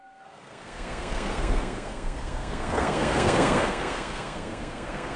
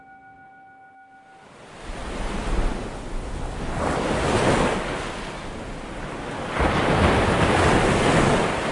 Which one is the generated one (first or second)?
first